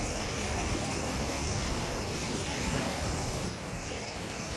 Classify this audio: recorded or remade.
remade